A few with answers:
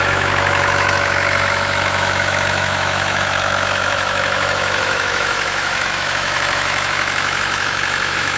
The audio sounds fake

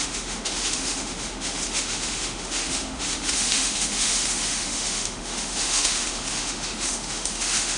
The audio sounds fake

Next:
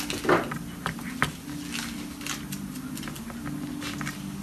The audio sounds real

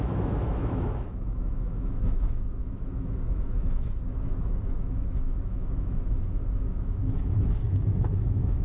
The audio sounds fake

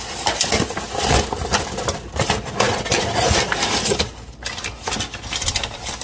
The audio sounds real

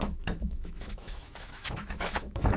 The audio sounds fake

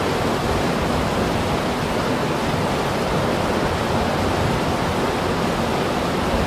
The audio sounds real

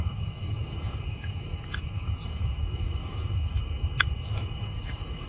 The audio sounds fake